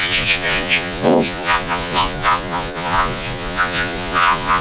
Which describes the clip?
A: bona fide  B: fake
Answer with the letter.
B